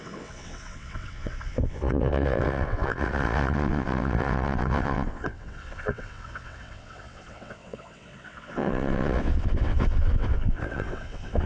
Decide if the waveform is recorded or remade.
remade